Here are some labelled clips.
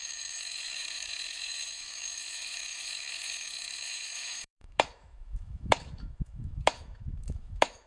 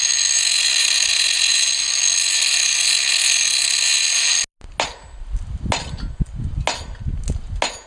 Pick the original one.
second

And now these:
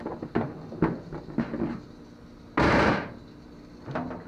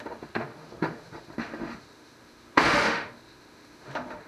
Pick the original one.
first